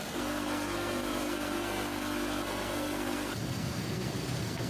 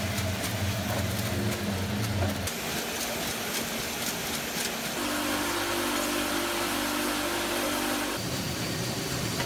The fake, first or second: first